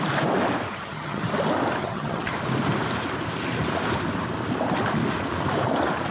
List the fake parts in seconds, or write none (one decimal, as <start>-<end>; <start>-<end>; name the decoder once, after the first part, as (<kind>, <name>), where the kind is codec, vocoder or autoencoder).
0.7-1.2 (vocoder, HiFi-GAN); 1.8-2.3